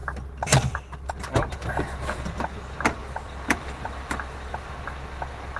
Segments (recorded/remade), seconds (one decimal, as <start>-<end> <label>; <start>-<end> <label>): 0.0-3.0 recorded; 3.0-4.7 remade; 4.7-5.6 recorded